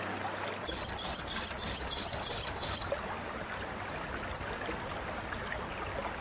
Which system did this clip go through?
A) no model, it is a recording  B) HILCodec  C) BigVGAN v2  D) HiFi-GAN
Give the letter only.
A